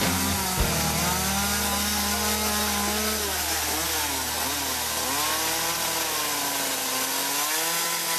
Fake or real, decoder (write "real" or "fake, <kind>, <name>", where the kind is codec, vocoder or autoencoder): real